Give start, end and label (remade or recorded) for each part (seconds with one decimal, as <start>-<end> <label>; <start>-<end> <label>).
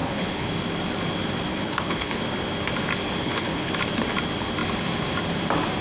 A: 0.0-0.5 remade; 0.5-1.5 recorded; 1.5-2.2 remade; 2.2-3.2 recorded; 3.2-3.7 remade; 3.7-5.8 recorded